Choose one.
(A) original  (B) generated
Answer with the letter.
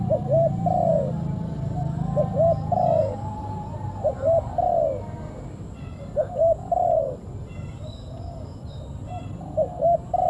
A